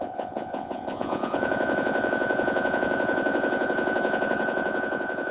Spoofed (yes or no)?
yes